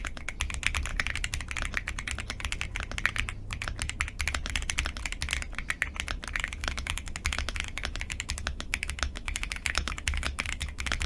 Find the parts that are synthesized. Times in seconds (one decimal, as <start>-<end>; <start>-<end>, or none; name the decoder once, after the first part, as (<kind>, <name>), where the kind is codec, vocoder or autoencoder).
6.6-11.1 (autoencoder, DAC-VAE)